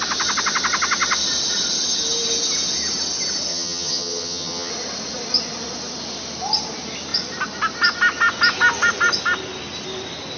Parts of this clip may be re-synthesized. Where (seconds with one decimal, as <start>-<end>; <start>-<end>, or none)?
3.5-4.7